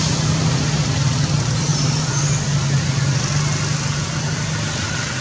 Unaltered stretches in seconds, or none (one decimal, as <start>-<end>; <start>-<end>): 0.0-5.2